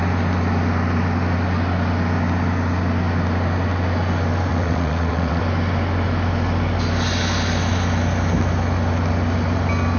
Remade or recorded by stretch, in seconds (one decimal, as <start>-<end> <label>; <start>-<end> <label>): 0.0-4.5 recorded; 4.5-5.4 remade; 5.4-10.0 recorded